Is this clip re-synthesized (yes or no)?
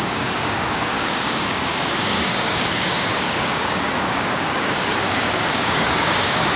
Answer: yes